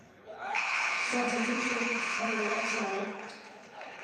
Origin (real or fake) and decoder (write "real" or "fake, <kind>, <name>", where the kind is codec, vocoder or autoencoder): fake, codec, HILCodec